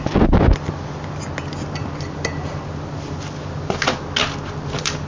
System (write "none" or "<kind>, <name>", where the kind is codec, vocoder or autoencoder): none